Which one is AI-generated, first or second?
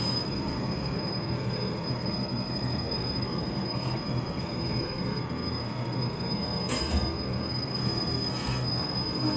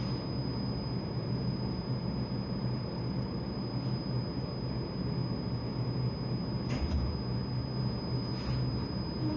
first